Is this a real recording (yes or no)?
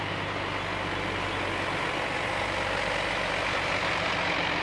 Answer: yes